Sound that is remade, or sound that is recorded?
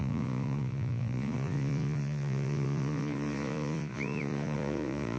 remade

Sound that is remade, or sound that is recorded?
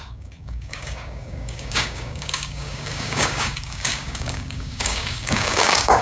remade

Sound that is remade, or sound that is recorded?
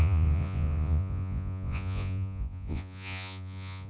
remade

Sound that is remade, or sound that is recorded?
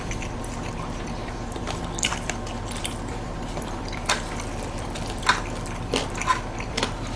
remade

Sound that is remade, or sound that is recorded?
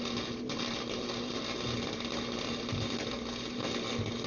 recorded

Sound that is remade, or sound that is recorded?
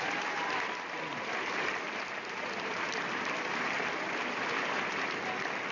recorded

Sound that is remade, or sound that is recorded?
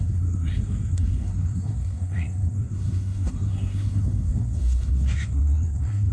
remade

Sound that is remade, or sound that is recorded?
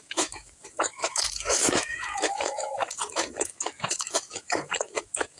remade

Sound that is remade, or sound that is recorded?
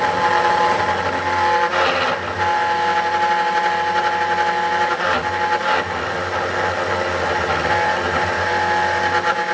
recorded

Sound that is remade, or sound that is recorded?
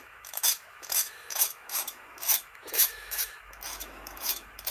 remade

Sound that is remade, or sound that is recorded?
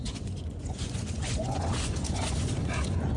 remade